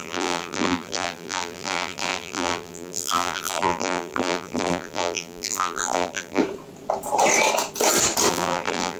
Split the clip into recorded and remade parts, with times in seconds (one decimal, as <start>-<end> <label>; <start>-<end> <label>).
0.0-6.4 remade; 6.4-8.3 recorded; 8.3-9.0 remade